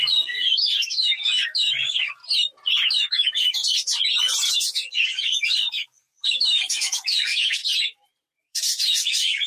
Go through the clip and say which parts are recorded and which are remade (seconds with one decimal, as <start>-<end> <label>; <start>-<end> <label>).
0.0-2.2 remade; 2.2-2.8 recorded; 2.8-3.6 remade; 3.6-4.5 recorded; 4.5-7.6 remade; 7.6-8.4 recorded; 8.4-9.5 remade